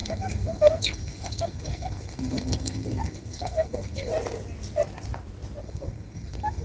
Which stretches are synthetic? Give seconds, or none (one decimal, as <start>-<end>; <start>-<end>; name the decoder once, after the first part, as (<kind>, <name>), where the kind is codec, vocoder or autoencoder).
0.0-4.1 (codec, SNAC); 5.6-6.6